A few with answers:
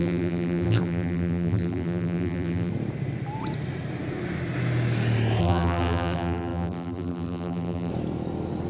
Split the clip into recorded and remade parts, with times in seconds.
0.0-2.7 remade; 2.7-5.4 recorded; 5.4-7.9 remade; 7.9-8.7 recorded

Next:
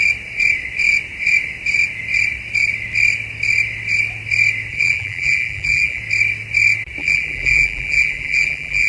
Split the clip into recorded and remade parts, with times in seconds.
0.0-4.7 recorded; 4.7-6.0 remade; 6.0-7.0 recorded; 7.0-8.9 remade